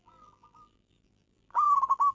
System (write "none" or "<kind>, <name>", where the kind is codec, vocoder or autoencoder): vocoder, BigVGAN v2